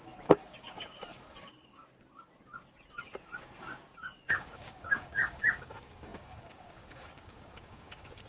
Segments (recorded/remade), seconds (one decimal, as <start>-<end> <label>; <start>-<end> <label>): 0.0-1.8 remade; 1.8-4.4 recorded; 4.4-8.3 remade